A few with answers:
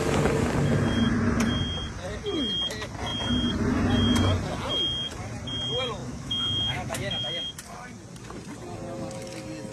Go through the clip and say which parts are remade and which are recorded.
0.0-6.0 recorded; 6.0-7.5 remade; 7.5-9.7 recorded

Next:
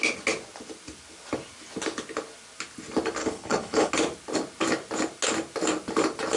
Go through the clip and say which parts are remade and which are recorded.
0.0-3.2 recorded; 3.2-3.9 remade; 3.9-6.4 recorded

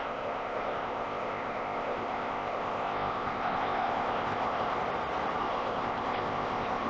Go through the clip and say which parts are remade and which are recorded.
0.0-4.8 remade; 4.8-5.4 recorded; 5.4-6.9 remade

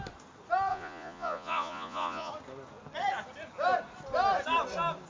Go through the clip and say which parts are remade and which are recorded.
0.0-0.7 recorded; 0.7-2.3 remade; 2.3-5.1 recorded

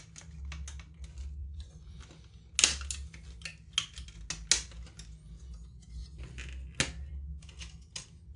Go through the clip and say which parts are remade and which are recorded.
0.0-1.4 recorded; 1.4-2.0 remade; 2.0-8.4 recorded

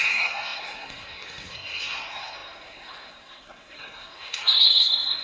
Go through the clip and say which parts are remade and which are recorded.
0.0-5.2 remade